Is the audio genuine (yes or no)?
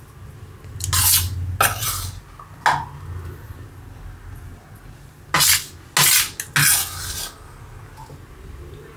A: yes